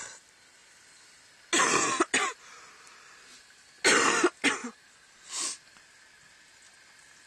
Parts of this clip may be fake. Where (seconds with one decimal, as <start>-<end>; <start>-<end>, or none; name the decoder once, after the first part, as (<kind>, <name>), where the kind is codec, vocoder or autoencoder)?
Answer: 4.6-5.3 (vocoder, BigVGAN v2)

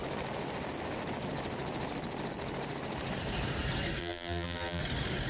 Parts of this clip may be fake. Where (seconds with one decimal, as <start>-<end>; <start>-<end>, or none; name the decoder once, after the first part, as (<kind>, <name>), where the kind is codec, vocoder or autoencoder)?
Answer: 4.0-4.8 (vocoder, BigVGAN v2)

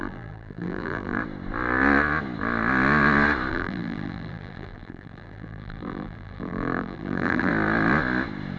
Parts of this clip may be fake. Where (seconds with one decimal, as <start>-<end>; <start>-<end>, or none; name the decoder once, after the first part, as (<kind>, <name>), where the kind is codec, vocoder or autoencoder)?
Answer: 0.0-1.2 (vocoder, BigVGAN v2); 3.5-7.5

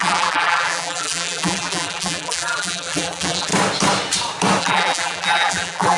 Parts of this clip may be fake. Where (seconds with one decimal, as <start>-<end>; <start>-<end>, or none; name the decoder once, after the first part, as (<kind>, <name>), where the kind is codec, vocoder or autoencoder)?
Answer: 0.0-3.5 (vocoder, BigVGAN v2); 4.6-6.0

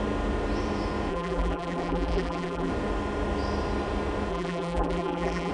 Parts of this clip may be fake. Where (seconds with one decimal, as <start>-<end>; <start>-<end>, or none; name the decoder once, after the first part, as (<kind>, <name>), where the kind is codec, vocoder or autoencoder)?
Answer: 1.1-2.7 (vocoder, BigVGAN v2); 4.3-5.5

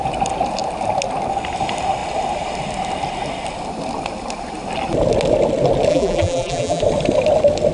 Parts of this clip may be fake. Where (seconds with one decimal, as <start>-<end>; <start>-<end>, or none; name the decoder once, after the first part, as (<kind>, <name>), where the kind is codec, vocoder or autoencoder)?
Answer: 5.9-6.8 (vocoder, BigVGAN v2)

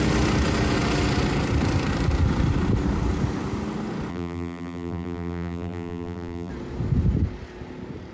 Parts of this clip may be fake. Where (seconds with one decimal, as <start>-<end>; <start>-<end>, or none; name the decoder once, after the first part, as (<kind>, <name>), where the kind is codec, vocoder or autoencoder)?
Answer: 4.1-6.5 (vocoder, BigVGAN v2)

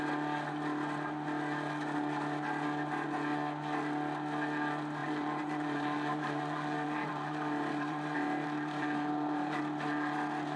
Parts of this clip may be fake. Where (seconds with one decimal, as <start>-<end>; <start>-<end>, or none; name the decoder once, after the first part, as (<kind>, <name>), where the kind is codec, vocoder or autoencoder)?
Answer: 5.0-9.6 (vocoder, BigVGAN v2)